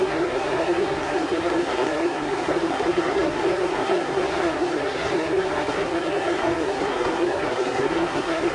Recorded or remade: remade